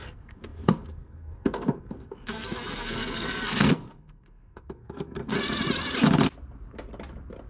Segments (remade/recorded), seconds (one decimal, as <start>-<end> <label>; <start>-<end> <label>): 0.0-5.2 remade; 5.2-7.5 recorded